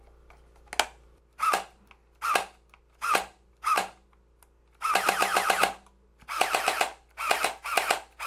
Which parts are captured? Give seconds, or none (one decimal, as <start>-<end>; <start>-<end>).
0.0-8.3

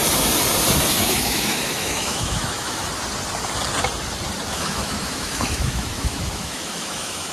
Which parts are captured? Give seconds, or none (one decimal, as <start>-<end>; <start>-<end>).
0.0-0.9; 2.8-4.5

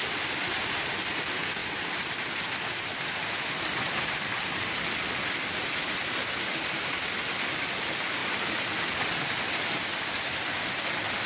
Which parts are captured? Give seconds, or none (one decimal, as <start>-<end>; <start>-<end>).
0.0-11.3

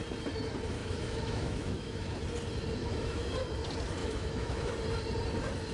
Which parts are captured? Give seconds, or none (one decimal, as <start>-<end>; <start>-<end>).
0.0-0.8; 2.2-2.8; 3.3-4.0; 4.7-5.7

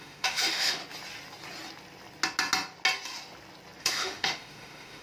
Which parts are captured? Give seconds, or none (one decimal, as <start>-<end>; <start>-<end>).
0.8-3.8